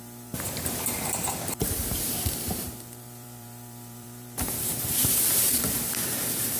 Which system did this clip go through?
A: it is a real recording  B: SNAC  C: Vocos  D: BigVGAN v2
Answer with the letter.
D